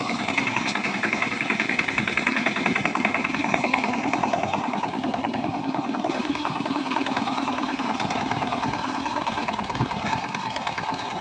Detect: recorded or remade remade